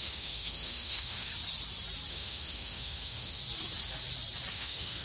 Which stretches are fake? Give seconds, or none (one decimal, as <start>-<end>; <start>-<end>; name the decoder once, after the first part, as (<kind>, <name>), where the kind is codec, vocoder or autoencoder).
0.0-1.3 (autoencoder, DAC-VAE); 2.1-3.4; 4.5-5.0